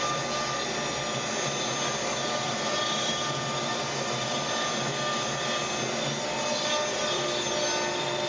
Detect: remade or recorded recorded